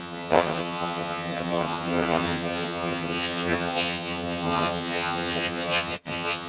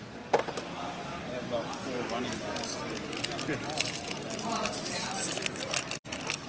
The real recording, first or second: second